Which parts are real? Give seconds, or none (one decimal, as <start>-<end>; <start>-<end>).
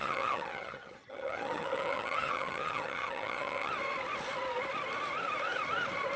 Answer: 3.7-6.2